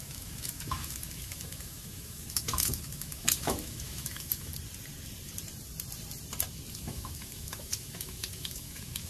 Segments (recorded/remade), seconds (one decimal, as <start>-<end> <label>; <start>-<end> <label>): 0.0-4.5 remade; 4.5-6.7 recorded; 6.7-9.1 remade